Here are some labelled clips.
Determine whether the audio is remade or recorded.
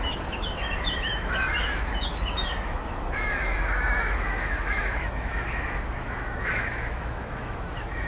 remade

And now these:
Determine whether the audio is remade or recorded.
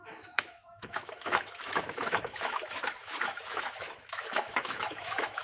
remade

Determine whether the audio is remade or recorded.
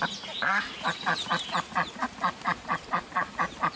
recorded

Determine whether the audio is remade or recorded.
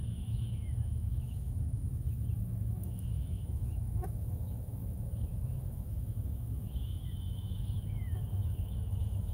remade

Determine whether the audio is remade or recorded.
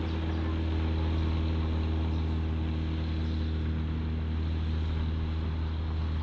recorded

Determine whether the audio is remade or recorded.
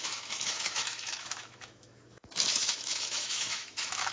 remade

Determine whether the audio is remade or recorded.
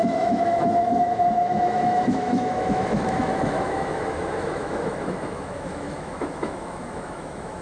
remade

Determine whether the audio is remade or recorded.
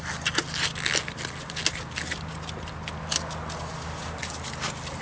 recorded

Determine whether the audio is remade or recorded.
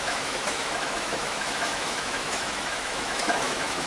remade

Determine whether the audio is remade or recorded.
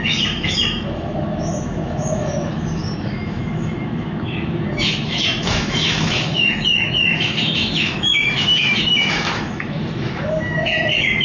remade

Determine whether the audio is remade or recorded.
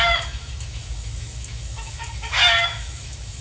remade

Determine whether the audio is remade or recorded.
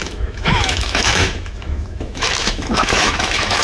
remade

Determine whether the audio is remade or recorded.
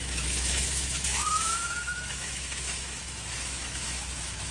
remade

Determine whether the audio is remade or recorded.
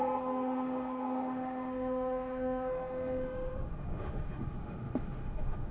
remade